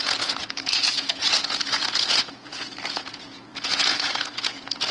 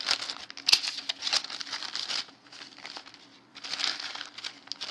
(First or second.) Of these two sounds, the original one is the second